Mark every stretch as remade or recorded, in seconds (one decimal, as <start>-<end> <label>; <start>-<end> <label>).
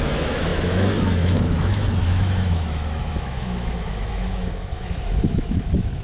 0.0-6.0 remade